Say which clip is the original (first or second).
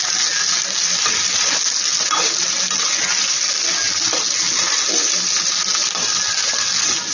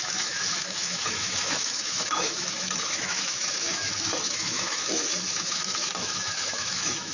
first